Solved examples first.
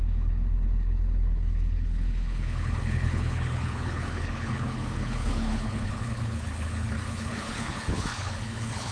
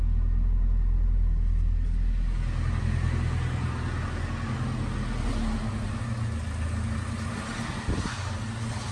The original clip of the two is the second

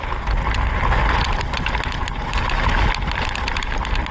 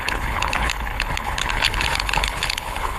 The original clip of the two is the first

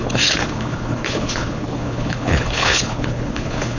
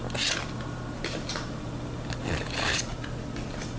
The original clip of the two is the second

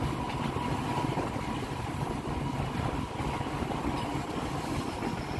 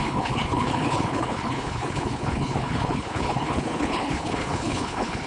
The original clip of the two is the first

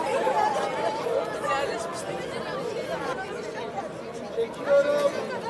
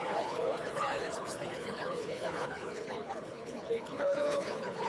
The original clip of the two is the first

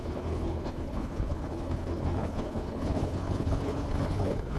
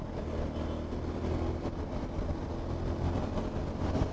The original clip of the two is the second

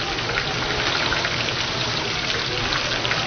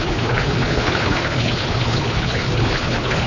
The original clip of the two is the first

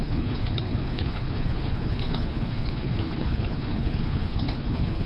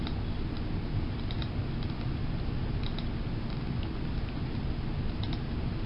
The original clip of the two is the second